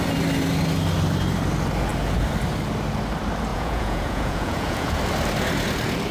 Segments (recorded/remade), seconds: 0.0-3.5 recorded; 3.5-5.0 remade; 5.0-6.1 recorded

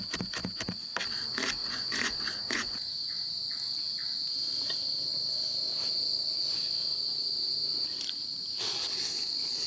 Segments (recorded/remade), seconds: 0.0-1.6 recorded; 1.6-3.3 remade; 3.3-9.7 recorded

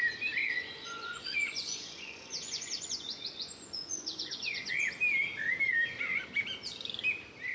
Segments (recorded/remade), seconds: 0.0-0.4 recorded; 0.4-4.9 remade; 4.9-7.5 recorded

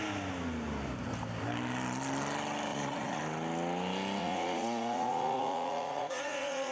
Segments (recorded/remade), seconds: 0.0-2.7 recorded; 2.7-3.2 remade; 3.2-4.2 recorded; 4.2-6.7 remade